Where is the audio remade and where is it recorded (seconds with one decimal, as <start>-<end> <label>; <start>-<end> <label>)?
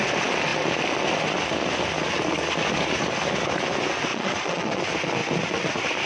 0.0-4.1 recorded; 4.1-4.8 remade; 4.8-6.1 recorded